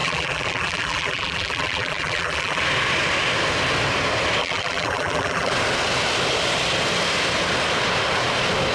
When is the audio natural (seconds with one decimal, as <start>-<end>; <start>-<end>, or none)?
2.6-4.4; 5.5-8.7